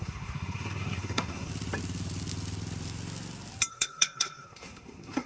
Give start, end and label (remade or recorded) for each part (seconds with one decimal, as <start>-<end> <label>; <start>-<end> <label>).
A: 0.0-1.5 remade; 1.5-3.7 recorded; 3.7-5.3 remade